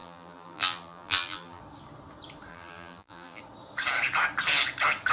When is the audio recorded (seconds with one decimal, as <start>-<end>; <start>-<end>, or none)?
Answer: 1.6-2.5; 3.4-5.1